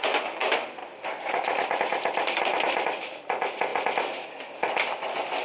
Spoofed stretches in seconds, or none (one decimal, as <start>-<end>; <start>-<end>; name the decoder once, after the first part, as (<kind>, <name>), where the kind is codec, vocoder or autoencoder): 0.8-3.2 (vocoder, BigVGAN v2)